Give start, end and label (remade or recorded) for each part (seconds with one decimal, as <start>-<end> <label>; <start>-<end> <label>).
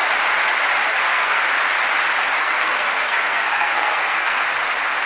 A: 0.0-0.9 recorded; 0.9-1.4 remade; 1.4-2.4 recorded; 2.4-4.4 remade; 4.4-5.1 recorded